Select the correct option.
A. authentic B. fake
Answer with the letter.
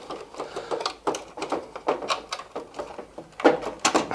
A